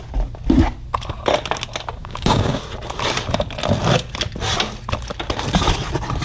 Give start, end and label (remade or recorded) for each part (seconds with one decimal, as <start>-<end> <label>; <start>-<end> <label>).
0.0-2.0 recorded; 2.0-2.6 remade; 2.6-6.2 recorded